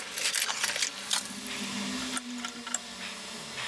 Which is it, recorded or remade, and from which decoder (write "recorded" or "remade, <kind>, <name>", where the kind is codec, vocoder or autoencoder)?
recorded